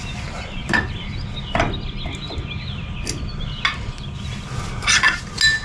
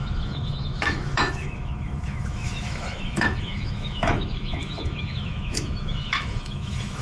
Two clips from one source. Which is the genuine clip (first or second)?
first